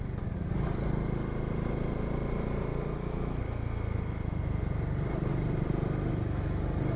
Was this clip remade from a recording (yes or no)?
no